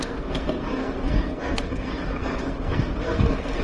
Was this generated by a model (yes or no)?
yes